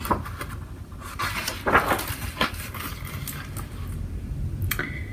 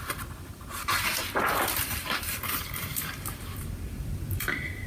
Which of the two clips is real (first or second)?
first